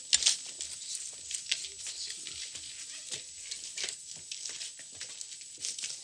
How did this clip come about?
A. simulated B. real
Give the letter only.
B